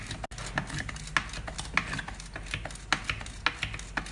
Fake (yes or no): no